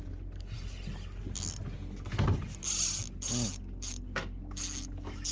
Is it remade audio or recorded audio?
recorded